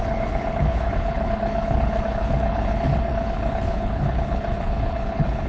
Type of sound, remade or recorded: remade